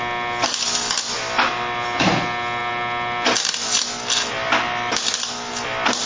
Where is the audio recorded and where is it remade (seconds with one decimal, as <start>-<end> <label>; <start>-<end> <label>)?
0.0-6.1 recorded